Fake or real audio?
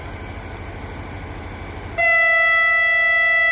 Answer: real